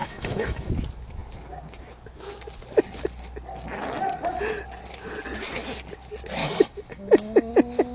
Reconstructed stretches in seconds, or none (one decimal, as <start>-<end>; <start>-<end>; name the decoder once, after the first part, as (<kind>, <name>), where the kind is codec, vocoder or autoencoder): 0.0-0.7 (autoencoder, DAC-VAE); 6.4-7.5